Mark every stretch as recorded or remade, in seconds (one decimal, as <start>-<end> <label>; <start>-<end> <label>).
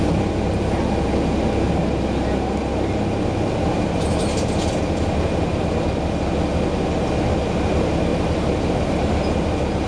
0.0-9.9 recorded